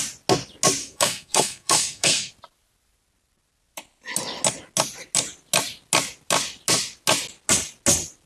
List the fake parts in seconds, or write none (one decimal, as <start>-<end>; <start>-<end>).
0.8-2.3